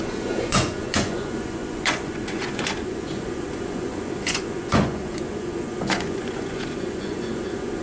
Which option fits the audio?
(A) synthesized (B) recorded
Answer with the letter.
A